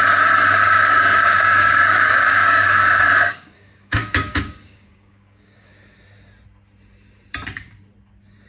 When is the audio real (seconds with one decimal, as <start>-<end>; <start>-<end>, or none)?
0.0-0.6; 5.7-8.5

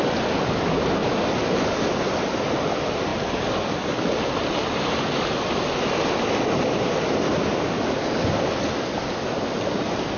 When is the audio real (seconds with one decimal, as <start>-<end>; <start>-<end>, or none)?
0.0-10.2

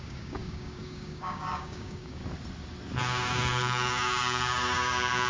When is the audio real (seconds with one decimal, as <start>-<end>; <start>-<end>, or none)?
2.2-3.0

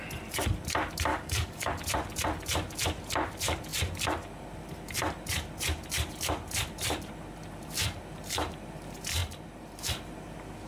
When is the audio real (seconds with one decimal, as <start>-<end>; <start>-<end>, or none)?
0.0-1.1; 1.7-10.7

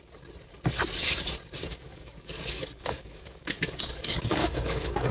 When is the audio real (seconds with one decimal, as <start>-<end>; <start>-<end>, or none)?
0.0-1.6